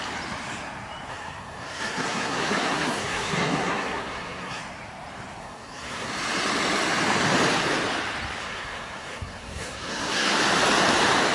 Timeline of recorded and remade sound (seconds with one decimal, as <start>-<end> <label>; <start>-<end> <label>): 0.0-1.1 recorded; 1.1-4.6 remade; 4.6-5.4 recorded; 5.4-6.1 remade; 6.1-8.4 recorded; 8.4-10.4 remade; 10.4-11.3 recorded